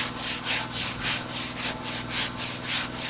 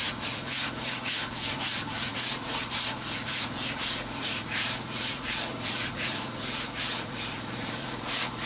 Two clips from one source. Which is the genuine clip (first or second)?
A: first